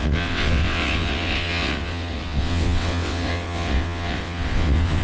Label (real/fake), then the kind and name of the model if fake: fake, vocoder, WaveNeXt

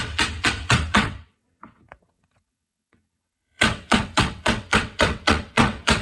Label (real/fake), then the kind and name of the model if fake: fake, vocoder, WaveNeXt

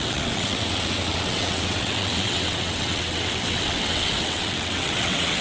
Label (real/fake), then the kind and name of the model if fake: fake, vocoder, WaveNeXt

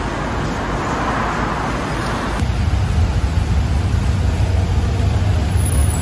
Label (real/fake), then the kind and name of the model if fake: real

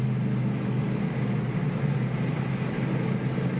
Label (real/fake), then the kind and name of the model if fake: real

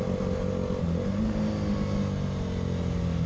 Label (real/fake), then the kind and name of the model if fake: real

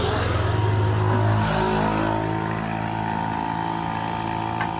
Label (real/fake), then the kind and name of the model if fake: real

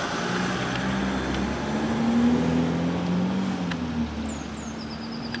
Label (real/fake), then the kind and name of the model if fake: real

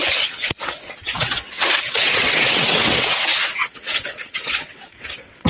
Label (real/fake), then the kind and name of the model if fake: fake, vocoder, WaveNeXt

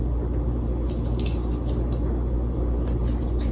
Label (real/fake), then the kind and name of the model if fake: real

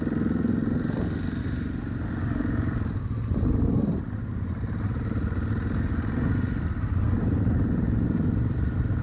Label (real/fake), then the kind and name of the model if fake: real